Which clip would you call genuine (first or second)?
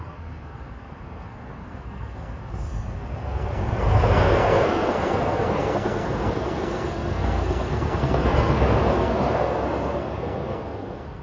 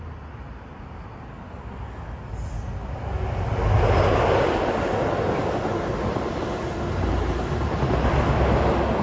second